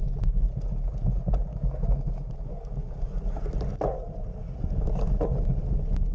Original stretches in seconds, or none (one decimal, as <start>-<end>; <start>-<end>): 0.0-1.5; 2.5-6.1